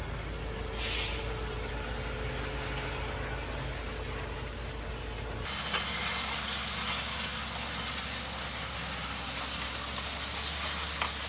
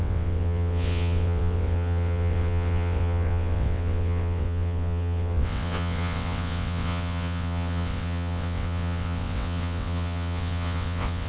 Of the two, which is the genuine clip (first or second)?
first